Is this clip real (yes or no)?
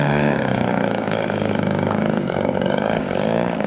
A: no